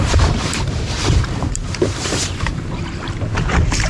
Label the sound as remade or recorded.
remade